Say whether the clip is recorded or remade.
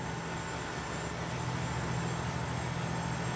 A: recorded